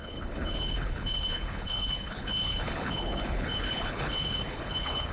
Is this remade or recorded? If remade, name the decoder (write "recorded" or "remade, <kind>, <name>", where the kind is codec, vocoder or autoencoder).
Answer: remade, codec, HILCodec